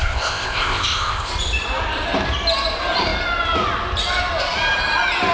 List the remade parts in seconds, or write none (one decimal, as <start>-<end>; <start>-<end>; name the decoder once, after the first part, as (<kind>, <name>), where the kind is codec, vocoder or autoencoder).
0.0-1.3 (codec, ZipCodec)